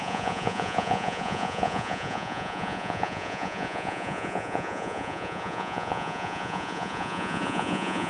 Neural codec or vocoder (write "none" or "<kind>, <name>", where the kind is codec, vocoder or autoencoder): vocoder, Vocos